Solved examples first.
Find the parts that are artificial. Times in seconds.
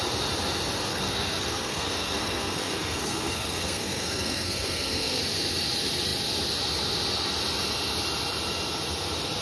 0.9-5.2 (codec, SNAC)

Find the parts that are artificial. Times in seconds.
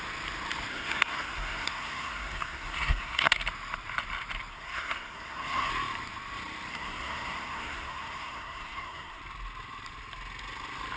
0.7-3.4 (codec, SNAC); 4.5-5.7; 6.7-9.2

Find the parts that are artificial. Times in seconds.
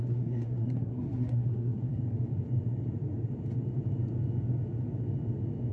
0.0-2.0 (codec, SNAC)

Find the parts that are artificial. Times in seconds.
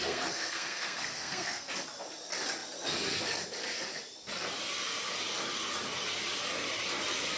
0.0-1.7 (codec, SNAC)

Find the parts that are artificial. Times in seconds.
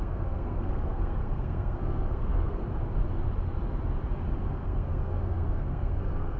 0.0-2.6 (codec, SNAC); 4.4-6.4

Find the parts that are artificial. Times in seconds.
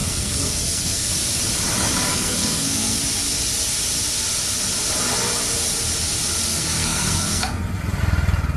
0.0-1.1 (codec, SNAC); 2.1-3.0; 6.5-7.6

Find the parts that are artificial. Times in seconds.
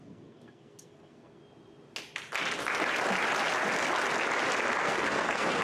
0.0-1.4 (codec, SNAC); 4.8-5.6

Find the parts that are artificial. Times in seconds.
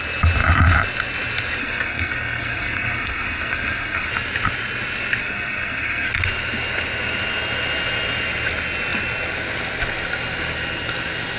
1.6-4.1 (codec, SNAC); 5.2-6.1